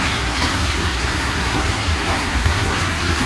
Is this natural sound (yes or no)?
no